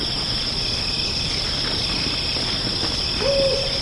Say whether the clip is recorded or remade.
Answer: recorded